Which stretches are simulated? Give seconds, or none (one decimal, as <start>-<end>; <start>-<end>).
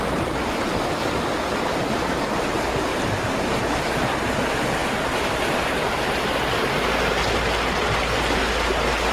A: 2.9-3.7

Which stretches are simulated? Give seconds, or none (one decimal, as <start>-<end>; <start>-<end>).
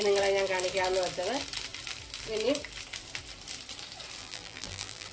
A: 4.2-5.1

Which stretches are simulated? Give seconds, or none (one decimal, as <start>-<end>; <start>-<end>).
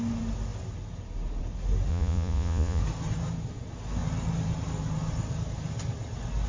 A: 1.9-2.8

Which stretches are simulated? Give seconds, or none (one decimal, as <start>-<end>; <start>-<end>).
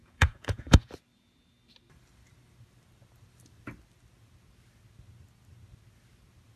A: 0.0-0.9